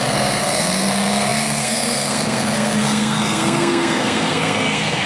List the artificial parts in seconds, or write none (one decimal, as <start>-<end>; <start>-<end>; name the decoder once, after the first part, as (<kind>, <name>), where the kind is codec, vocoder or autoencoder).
0.0-5.1 (codec, SNAC)